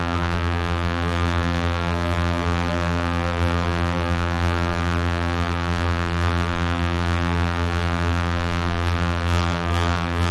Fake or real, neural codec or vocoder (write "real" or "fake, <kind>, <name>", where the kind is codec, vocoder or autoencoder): fake, vocoder, BigVGAN v2